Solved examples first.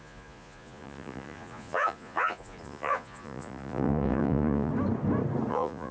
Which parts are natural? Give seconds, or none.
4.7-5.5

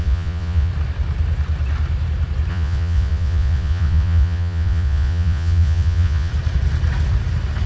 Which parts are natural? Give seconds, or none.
0.7-2.5; 6.3-7.7

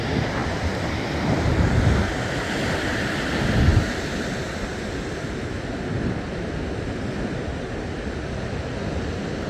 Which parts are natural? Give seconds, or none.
0.0-9.5

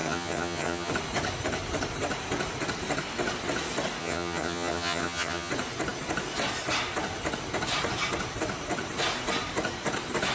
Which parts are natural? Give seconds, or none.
0.9-4.0; 5.5-10.3